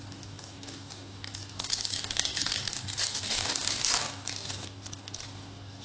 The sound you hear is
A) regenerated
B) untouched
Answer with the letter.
A